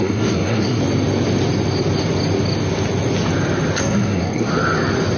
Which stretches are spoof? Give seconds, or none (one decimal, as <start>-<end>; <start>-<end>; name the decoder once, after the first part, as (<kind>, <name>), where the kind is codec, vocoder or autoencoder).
0.0-0.8 (codec, SNAC); 3.8-4.5